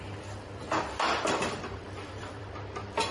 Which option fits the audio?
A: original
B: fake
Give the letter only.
B